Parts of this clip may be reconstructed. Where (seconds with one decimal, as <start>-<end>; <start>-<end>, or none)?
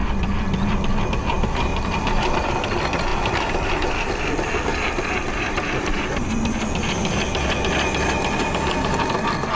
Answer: 1.7-2.5; 3.1-4.1; 4.7-6.0